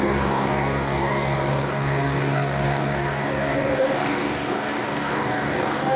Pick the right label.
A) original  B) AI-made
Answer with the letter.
B